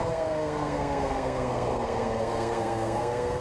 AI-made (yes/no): yes